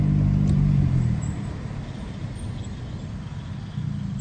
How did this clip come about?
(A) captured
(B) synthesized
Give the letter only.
A